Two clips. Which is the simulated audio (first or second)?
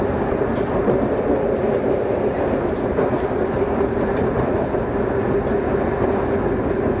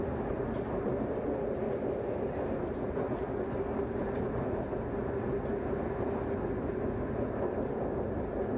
first